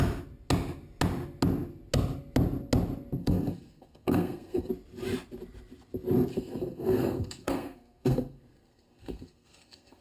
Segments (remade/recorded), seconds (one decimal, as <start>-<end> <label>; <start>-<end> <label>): 0.0-3.2 recorded; 3.2-4.7 remade; 4.7-6.3 recorded; 6.3-10.0 remade